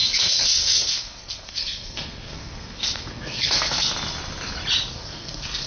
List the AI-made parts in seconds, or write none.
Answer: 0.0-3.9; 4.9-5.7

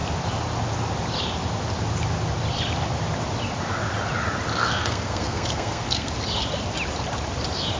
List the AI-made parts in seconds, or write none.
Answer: 4.6-6.1

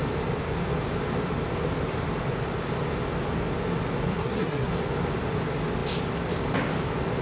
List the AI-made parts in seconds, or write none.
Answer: 4.1-4.7

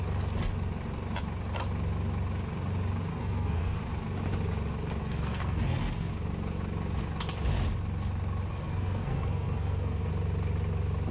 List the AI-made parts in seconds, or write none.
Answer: 3.1-3.8; 5.0-6.1; 8.5-10.1

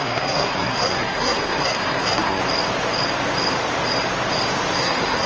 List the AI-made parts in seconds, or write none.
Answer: 0.0-2.4; 4.8-5.3

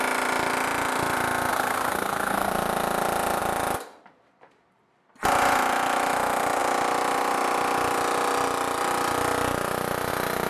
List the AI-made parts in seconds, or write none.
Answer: 1.5-2.5

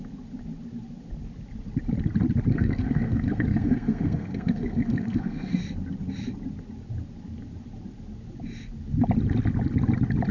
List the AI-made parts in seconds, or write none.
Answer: 2.5-5.6

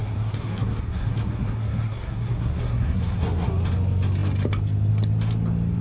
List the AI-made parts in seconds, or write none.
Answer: 0.0-3.5